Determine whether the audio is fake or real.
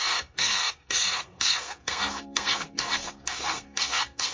fake